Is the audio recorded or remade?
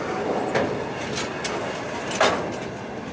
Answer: recorded